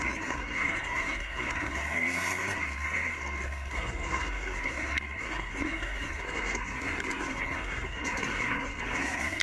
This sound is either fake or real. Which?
fake